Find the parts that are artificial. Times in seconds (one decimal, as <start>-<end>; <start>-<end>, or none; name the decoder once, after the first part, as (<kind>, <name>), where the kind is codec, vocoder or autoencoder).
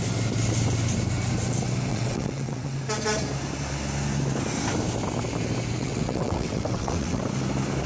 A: 1.9-2.8 (vocoder, WaveNeXt); 5.8-7.2